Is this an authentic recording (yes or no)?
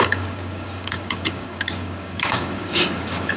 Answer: no